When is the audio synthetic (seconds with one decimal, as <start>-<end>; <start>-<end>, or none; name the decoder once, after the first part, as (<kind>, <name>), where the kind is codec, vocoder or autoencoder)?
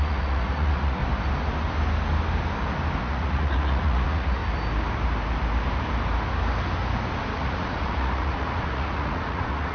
0.0-1.0 (vocoder, Vocos); 3.0-4.4; 7.3-9.7